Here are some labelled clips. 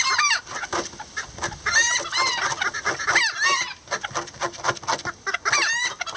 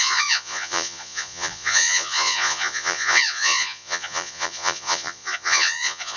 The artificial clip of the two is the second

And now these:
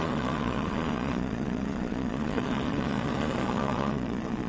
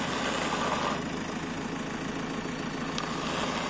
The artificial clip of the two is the first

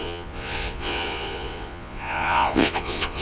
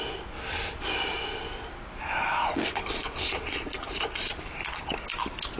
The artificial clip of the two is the first